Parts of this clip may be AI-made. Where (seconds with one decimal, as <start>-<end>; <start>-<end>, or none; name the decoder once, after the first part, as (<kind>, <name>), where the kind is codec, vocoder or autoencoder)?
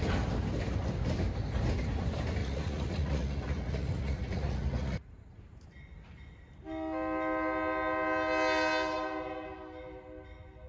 2.4-5.4 (vocoder, Vocos)